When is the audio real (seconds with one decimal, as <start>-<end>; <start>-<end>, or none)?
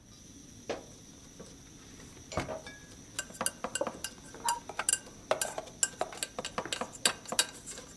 0.0-8.0